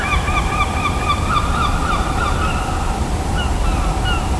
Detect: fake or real fake